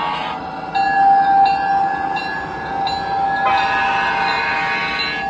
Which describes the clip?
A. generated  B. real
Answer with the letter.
B